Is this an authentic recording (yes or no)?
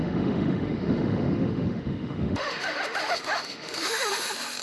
no